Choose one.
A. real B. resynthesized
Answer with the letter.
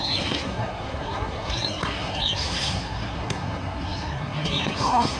B